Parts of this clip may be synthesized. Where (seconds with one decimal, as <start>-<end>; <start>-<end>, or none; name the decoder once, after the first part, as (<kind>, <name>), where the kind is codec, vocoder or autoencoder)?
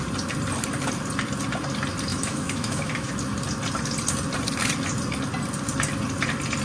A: 2.1-3.1 (autoencoder, DAC-VAE)